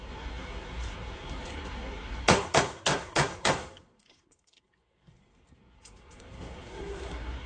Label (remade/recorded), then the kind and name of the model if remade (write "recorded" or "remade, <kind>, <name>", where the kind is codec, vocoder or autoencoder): remade, codec, SNAC